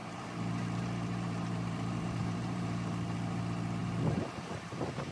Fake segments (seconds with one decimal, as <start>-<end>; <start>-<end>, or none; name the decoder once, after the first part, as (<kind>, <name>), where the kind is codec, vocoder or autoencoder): 0.0-2.8 (vocoder, BigVGAN v2); 3.8-5.1